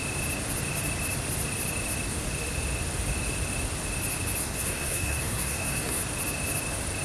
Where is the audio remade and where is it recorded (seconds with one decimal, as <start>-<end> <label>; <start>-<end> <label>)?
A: 0.0-4.4 recorded; 4.4-6.0 remade; 6.0-7.0 recorded